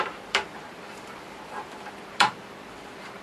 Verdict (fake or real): fake